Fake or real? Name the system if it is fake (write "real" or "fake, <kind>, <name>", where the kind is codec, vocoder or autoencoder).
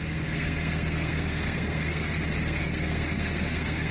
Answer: fake, codec, SNAC